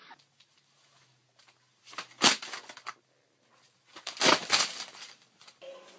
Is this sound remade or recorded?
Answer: recorded